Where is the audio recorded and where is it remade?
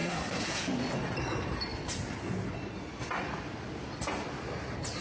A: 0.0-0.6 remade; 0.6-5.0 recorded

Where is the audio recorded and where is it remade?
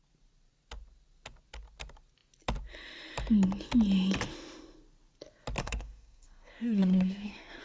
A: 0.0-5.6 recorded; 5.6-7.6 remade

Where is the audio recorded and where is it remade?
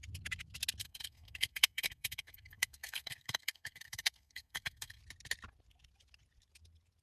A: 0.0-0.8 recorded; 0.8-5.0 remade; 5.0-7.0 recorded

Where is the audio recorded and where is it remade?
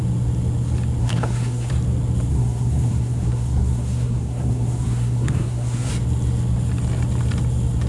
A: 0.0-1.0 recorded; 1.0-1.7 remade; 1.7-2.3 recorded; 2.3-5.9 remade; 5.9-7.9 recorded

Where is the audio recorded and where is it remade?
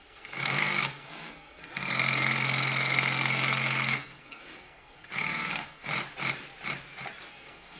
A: 0.0-5.9 remade; 5.9-7.3 recorded; 7.3-7.8 remade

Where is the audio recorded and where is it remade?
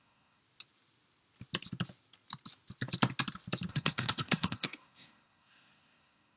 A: 0.0-0.4 remade; 0.4-3.7 recorded; 3.7-6.4 remade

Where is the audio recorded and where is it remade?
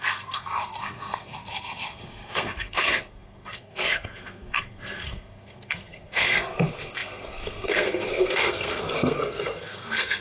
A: 0.0-10.2 remade